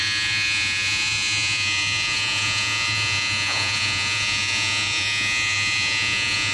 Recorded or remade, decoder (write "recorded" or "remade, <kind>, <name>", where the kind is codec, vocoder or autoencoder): remade, vocoder, Vocos